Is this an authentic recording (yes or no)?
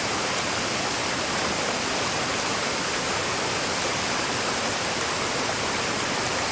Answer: yes